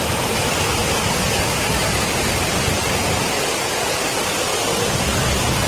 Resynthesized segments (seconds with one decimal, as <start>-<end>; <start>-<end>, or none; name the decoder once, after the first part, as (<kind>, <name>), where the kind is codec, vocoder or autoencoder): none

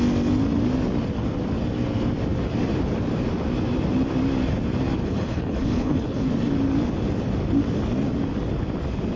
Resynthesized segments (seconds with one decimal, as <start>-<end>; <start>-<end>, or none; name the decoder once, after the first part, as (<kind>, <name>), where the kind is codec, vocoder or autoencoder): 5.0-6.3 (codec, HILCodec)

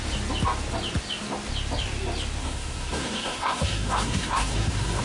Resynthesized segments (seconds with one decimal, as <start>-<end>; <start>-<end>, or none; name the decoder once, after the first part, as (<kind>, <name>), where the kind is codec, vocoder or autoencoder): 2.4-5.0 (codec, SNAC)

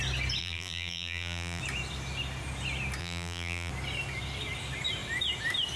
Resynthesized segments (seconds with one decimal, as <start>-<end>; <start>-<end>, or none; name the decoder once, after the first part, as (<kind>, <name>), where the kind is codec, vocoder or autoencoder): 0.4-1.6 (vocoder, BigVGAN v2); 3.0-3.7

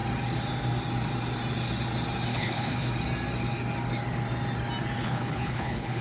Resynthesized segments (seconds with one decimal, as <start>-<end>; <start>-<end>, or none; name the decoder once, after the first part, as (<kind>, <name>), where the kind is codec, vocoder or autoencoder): 2.3-2.9 (codec, HILCodec); 5.0-6.0

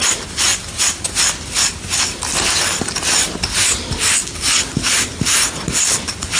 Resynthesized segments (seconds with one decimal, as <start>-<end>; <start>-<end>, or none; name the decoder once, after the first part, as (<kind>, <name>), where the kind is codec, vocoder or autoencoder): none